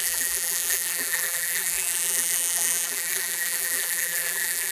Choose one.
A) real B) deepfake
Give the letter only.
B